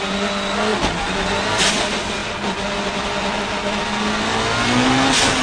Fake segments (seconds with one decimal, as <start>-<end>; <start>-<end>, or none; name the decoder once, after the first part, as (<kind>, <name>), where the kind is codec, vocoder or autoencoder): none